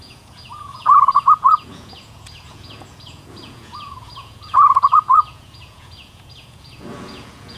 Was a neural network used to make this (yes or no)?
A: yes